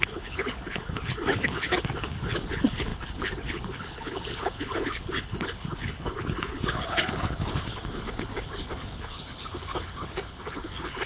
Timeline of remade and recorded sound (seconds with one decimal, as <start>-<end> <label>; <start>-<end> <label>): 0.0-11.1 remade